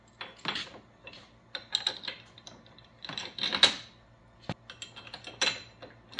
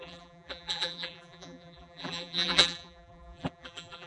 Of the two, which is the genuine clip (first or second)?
first